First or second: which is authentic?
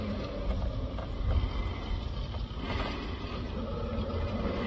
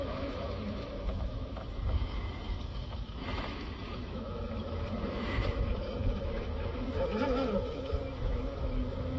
first